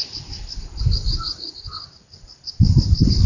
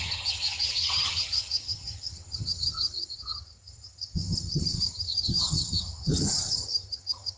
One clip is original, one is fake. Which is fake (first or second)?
second